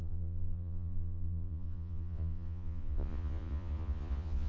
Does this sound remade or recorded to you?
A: remade